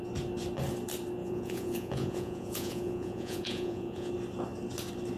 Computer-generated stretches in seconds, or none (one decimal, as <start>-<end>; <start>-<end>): 1.2-4.1